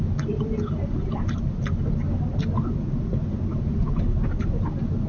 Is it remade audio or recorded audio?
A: recorded